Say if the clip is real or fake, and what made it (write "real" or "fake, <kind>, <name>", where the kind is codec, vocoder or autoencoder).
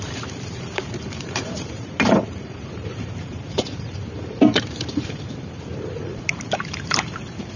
fake, vocoder, BigVGAN v2